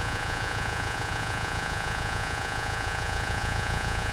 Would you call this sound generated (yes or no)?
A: yes